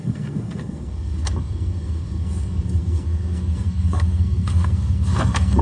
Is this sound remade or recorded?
remade